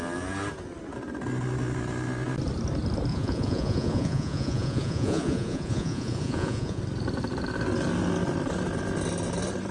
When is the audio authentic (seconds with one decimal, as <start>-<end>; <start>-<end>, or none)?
0.0-3.1; 6.8-9.7